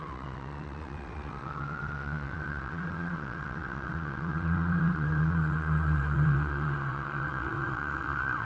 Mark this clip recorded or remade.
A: remade